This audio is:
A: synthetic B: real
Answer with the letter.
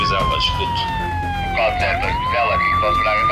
B